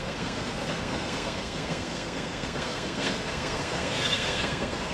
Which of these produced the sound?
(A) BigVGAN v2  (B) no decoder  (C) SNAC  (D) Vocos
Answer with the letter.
C